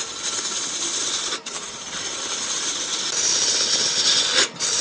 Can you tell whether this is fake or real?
real